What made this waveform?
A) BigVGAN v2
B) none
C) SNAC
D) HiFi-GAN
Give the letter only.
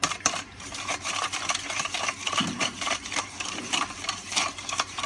A